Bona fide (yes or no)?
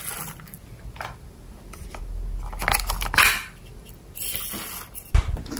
yes